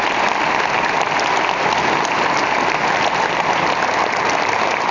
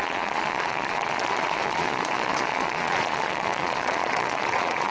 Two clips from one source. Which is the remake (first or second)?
second